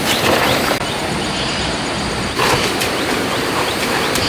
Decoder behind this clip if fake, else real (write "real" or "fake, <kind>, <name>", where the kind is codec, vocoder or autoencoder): fake, vocoder, BigVGAN v2